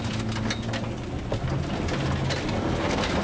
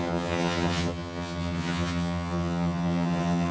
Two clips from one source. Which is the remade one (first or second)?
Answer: second